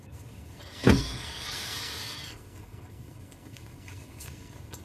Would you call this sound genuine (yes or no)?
no